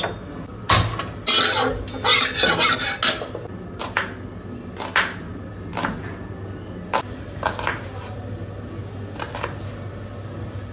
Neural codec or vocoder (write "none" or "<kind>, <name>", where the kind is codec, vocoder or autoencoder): none